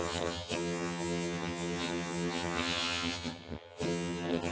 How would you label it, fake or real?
fake